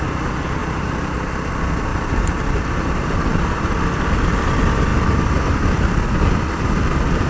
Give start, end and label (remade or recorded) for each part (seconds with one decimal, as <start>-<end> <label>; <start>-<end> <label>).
0.0-0.6 recorded; 0.6-1.5 remade; 1.5-1.9 recorded; 1.9-3.4 remade; 3.4-7.3 recorded